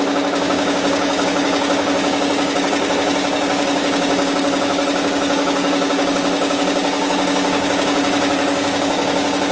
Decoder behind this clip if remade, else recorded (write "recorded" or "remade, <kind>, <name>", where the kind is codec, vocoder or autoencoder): remade, codec, DAC